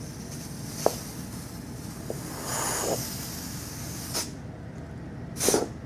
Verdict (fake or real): real